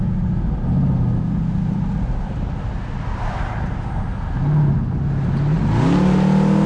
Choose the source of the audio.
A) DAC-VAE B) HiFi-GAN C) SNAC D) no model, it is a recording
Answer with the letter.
D